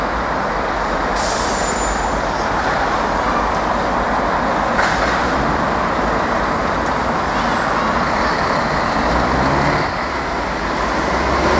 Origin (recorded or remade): recorded